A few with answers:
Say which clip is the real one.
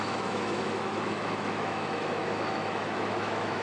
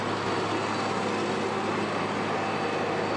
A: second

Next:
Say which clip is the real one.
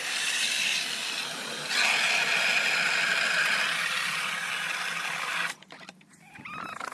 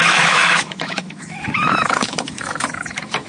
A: first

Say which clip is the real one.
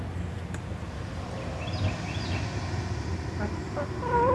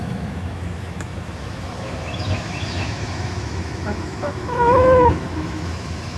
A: first